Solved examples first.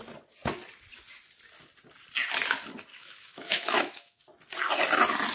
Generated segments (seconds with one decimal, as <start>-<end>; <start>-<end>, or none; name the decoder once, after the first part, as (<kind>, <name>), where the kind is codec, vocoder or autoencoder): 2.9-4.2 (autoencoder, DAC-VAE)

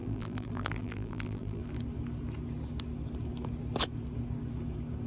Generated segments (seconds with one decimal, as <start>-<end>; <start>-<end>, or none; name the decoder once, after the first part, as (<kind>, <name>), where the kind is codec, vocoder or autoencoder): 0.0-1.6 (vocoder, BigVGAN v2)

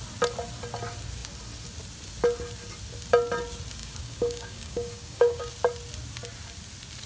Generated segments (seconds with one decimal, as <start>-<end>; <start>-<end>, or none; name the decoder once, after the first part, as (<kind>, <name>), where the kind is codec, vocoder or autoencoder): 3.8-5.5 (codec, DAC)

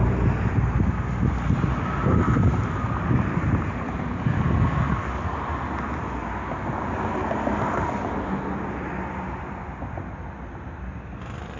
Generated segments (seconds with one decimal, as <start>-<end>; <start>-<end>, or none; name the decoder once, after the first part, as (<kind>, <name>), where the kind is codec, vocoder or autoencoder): 0.0-0.6 (vocoder, BigVGAN v2)

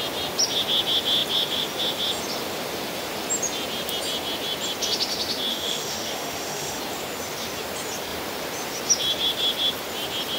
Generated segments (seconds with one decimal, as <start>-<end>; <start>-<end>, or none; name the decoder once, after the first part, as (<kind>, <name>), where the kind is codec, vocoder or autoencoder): 5.5-6.8 (autoencoder, DAC-VAE)